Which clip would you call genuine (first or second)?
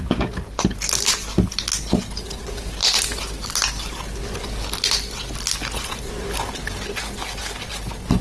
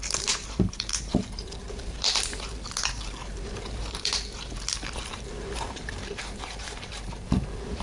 first